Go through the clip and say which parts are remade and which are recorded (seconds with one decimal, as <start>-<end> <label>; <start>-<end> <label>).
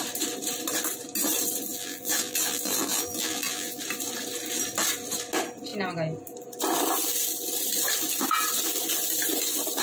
0.0-1.7 recorded; 1.7-3.8 remade; 3.8-9.8 recorded